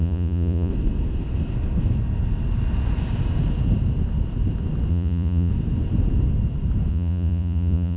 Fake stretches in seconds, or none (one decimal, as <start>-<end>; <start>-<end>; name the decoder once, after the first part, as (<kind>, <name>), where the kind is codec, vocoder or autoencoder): 0.0-0.7 (vocoder, Vocos); 4.9-5.5; 6.9-8.0